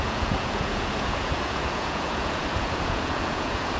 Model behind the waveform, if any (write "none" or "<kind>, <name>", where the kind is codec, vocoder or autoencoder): vocoder, Vocos